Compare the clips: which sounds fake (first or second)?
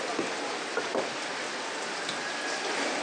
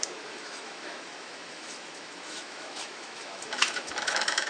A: second